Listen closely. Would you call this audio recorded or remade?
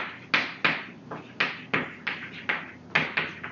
recorded